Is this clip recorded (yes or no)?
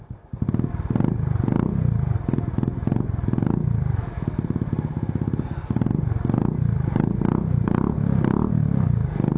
yes